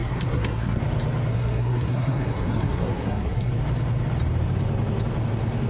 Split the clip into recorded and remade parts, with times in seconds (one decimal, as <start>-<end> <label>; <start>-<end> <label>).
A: 0.0-0.8 remade; 0.8-1.3 recorded; 1.3-3.5 remade; 3.5-5.7 recorded

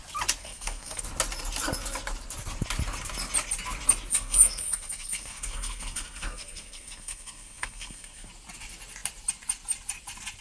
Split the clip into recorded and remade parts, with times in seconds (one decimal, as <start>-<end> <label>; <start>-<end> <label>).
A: 0.0-0.4 recorded; 0.4-1.0 remade; 1.0-4.1 recorded; 4.1-8.3 remade; 8.3-10.4 recorded

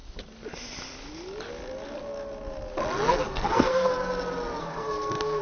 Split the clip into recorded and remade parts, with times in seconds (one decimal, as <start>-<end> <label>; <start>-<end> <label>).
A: 0.0-3.1 recorded; 3.1-3.9 remade; 3.9-4.6 recorded; 4.6-5.4 remade

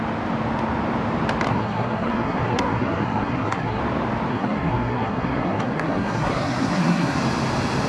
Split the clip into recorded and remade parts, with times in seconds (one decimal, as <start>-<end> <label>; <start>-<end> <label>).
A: 0.0-1.5 recorded; 1.5-3.8 remade; 3.8-4.3 recorded; 4.3-7.2 remade; 7.2-7.9 recorded

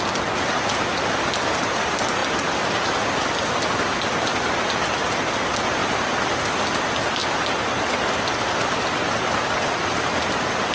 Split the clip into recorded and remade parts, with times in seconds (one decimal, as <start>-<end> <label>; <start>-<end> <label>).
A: 0.0-10.7 recorded

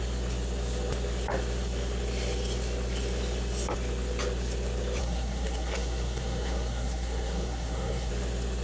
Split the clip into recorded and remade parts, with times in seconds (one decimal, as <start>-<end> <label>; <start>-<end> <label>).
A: 0.0-5.0 recorded; 5.0-8.1 remade; 8.1-8.6 recorded